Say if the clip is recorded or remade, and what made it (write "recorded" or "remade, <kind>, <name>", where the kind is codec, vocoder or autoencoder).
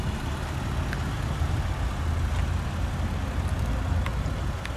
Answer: recorded